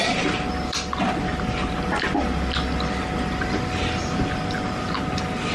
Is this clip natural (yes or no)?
yes